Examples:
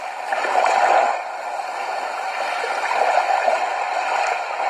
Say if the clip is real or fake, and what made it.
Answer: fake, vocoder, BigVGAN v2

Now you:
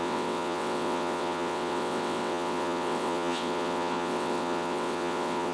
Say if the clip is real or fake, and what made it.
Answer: fake, vocoder, WaveNeXt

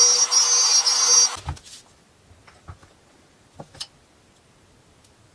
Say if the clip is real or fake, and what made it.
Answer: real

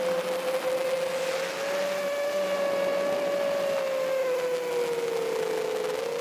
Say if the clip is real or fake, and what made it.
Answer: real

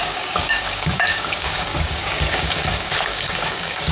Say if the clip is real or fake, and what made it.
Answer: fake, codec, DAC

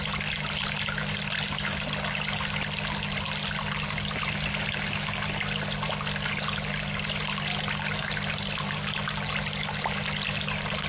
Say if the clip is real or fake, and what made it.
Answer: real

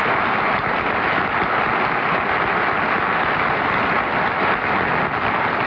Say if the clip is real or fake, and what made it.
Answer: real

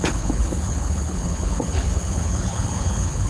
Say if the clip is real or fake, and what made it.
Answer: fake, codec, HILCodec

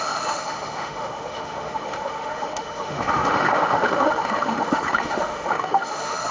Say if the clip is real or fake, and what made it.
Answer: fake, autoencoder, DAC-VAE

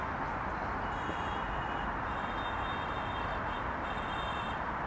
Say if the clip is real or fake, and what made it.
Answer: real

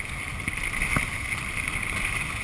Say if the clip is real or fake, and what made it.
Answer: real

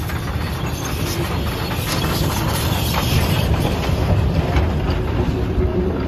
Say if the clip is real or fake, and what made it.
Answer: real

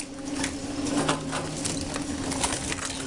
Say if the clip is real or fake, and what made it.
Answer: real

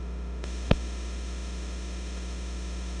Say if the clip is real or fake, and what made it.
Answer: fake, autoencoder, DAC-VAE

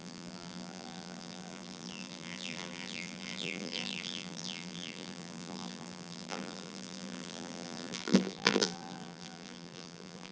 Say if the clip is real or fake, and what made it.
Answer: fake, vocoder, BigVGAN v2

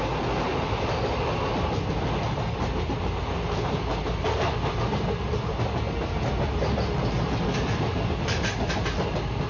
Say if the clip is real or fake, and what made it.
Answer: real